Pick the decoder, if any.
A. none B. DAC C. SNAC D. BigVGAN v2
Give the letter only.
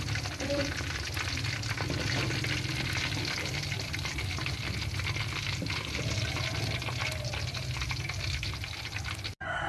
A